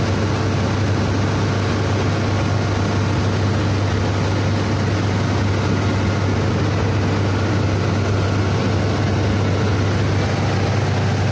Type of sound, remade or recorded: recorded